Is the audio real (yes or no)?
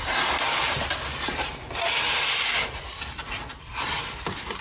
yes